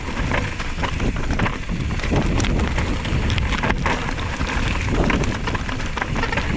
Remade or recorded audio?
recorded